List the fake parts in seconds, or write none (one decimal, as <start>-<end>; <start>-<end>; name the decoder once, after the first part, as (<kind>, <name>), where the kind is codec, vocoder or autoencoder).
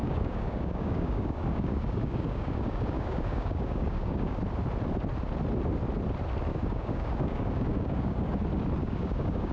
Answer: 0.0-4.4 (codec, DAC); 6.5-8.4; 8.8-9.5